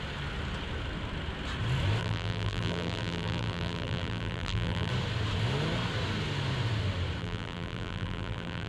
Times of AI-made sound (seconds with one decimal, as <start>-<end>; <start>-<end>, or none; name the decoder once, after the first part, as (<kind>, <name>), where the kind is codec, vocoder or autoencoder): 2.0-4.9 (vocoder, BigVGAN v2); 7.2-8.7